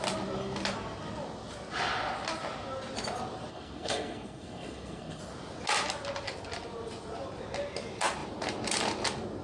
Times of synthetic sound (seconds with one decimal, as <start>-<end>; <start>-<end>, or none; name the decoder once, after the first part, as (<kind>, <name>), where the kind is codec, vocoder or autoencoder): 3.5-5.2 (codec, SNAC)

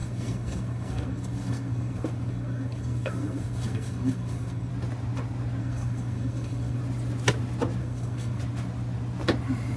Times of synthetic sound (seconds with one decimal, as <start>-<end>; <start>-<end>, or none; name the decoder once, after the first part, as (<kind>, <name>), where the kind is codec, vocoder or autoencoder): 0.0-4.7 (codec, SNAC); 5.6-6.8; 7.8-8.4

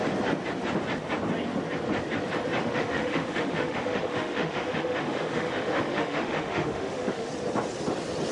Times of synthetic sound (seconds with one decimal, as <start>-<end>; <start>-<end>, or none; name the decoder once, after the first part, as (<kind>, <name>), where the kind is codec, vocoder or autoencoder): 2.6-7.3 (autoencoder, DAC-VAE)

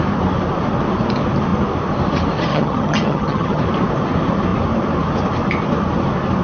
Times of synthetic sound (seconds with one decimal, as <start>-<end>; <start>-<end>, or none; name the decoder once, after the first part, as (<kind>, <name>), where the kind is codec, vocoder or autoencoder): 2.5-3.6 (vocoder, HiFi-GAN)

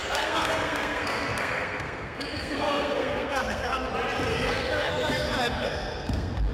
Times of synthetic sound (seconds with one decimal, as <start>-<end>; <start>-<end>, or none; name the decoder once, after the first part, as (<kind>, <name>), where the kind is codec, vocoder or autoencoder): 0.0-3.9 (codec, SNAC); 4.3-6.5